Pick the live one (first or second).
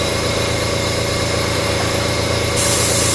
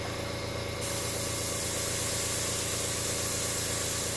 second